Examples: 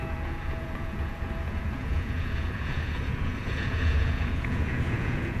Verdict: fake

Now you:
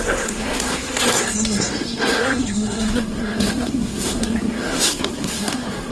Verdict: fake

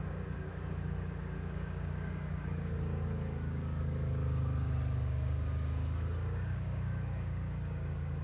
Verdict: fake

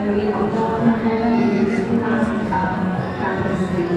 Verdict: fake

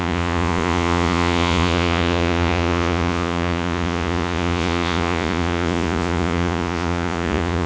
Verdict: fake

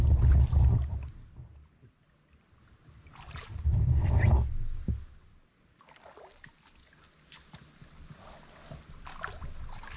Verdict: real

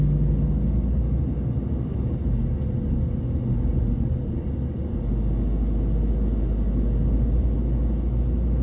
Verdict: real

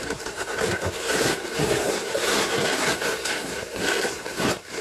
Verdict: fake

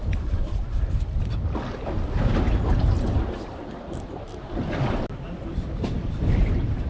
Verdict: real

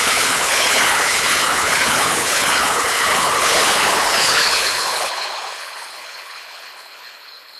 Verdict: fake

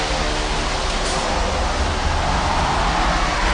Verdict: real